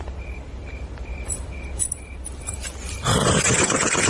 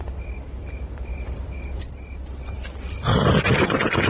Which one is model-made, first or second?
first